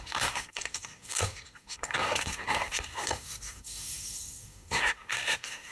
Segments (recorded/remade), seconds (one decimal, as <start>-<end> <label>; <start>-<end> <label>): 0.0-5.7 remade

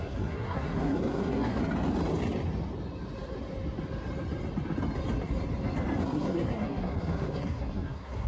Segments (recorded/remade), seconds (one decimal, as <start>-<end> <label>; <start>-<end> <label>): 0.0-1.6 remade; 1.6-6.0 recorded; 6.0-8.3 remade